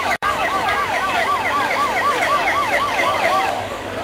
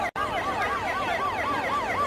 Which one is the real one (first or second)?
second